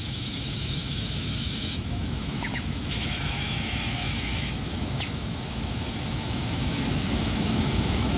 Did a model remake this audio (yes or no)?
yes